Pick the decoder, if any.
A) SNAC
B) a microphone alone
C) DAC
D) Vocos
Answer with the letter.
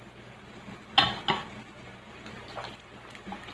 B